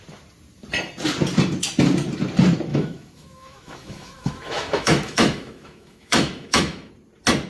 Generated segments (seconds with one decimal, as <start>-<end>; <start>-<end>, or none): 2.7-6.9